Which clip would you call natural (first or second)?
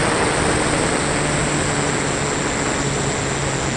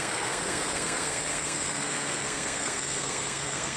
first